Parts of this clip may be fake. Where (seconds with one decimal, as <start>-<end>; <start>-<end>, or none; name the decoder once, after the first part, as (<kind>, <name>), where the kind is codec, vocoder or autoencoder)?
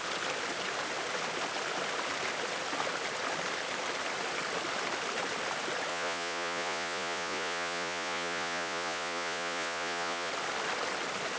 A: 5.9-10.3 (vocoder, Vocos)